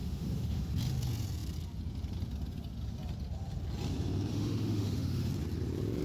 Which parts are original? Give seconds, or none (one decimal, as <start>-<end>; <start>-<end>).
0.7-4.3; 5.3-6.0